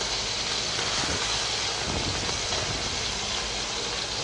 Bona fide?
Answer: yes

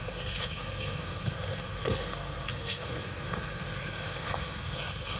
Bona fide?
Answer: no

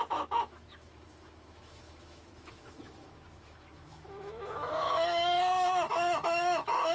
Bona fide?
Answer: no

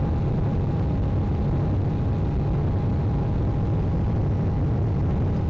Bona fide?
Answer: yes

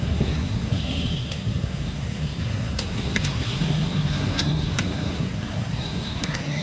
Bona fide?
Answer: no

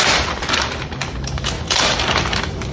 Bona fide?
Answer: no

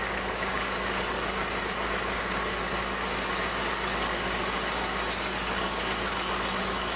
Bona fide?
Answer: no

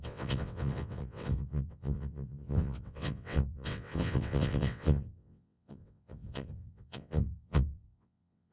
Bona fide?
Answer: no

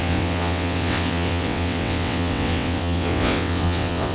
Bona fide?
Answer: no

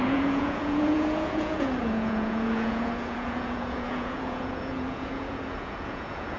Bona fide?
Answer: no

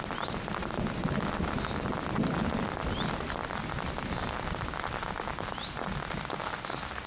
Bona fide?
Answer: yes